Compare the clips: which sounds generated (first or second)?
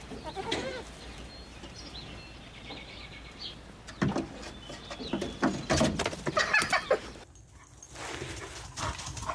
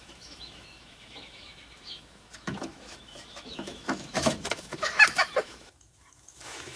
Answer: second